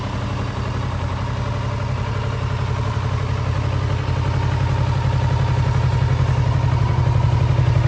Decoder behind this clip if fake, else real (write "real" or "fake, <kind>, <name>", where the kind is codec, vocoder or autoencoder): real